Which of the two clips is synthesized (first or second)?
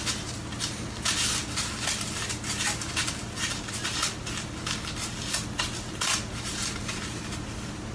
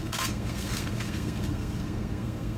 second